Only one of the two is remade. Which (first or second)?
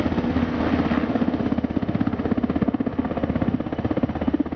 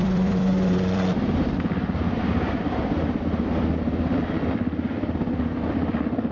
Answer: second